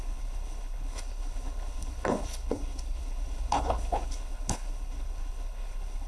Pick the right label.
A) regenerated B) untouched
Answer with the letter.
A